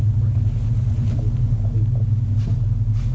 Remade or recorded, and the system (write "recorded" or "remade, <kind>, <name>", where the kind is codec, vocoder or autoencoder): recorded